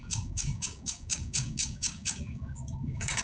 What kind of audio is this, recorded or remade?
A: remade